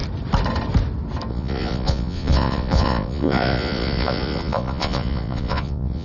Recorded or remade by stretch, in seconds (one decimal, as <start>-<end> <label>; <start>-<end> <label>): 0.0-1.3 recorded; 1.3-6.0 remade